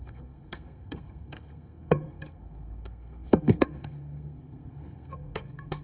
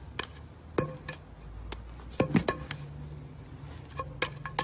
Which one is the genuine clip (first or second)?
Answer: second